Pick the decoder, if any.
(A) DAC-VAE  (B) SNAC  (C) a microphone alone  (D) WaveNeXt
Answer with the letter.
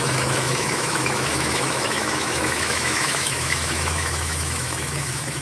A